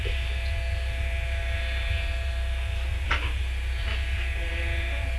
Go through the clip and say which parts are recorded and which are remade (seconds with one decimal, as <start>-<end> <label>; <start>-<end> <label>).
0.0-5.2 recorded